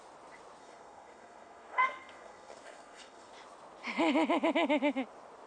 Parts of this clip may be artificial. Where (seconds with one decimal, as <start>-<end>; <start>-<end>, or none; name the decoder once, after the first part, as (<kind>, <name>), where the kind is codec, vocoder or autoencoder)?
0.6-3.3 (codec, SNAC)